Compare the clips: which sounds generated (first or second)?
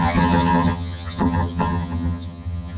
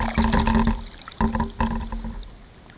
first